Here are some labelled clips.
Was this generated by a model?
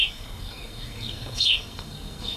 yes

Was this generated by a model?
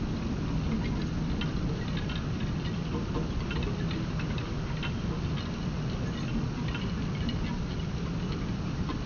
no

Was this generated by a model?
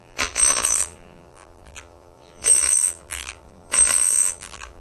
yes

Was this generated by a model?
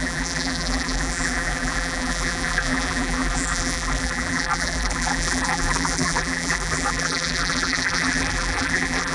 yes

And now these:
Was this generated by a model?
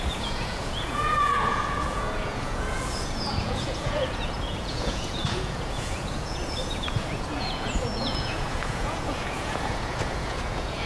yes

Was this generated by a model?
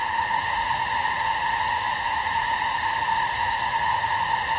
yes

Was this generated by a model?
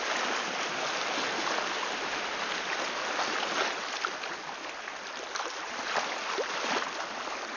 no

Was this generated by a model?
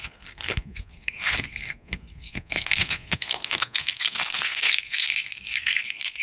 yes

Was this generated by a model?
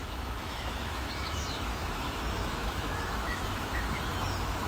yes